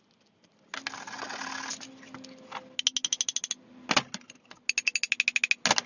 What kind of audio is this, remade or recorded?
recorded